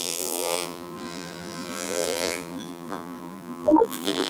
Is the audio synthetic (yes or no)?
yes